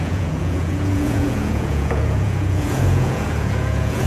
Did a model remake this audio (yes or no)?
yes